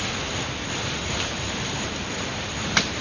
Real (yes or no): no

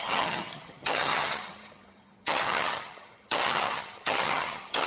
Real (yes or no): no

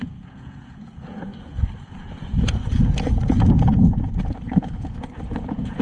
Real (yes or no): no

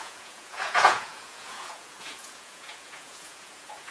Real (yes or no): no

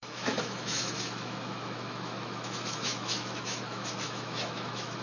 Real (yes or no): no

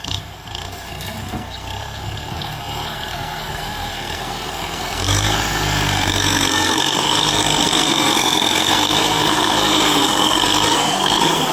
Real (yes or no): no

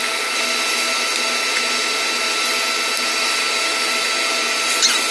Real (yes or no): yes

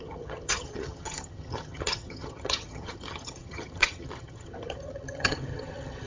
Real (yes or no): no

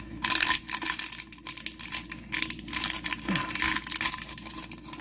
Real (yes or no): yes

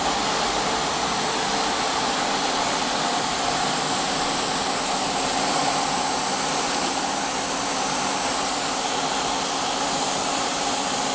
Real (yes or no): yes